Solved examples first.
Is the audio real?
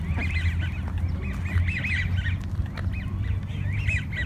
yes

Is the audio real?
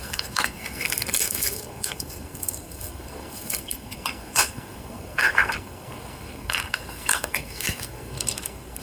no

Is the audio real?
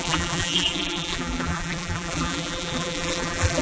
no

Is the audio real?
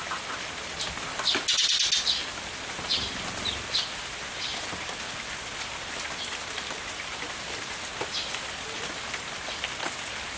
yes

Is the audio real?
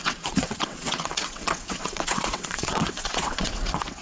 no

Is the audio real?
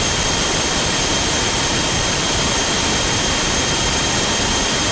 no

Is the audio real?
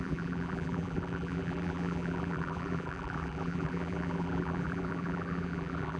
no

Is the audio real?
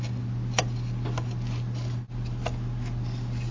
yes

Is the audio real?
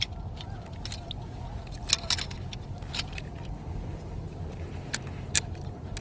yes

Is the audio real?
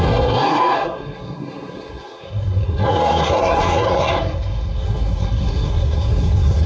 no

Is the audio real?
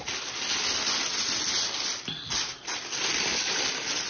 yes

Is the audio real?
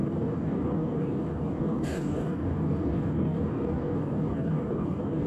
no